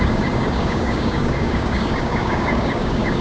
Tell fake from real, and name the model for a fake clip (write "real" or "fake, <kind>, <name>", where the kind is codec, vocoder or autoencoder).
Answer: fake, codec, DAC